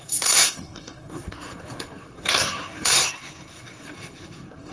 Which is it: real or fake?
fake